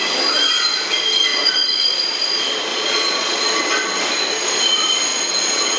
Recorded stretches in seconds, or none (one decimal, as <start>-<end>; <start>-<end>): 0.0-1.3; 2.1-2.7; 3.4-5.1